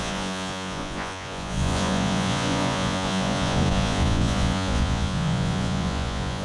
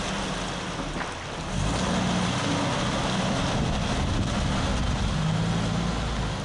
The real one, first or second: second